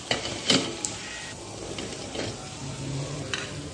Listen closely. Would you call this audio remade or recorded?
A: remade